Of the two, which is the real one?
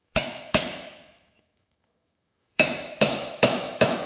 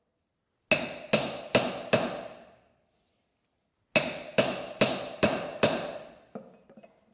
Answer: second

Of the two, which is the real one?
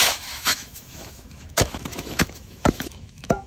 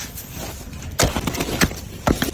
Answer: second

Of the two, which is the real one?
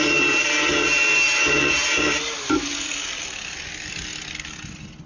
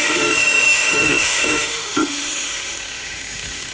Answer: first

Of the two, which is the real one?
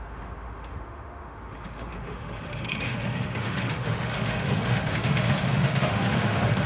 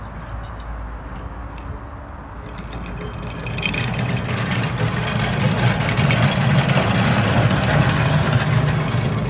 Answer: second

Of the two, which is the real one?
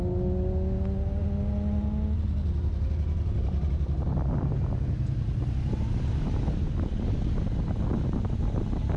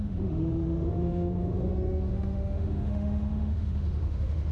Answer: first